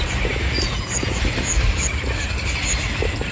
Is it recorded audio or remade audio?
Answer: recorded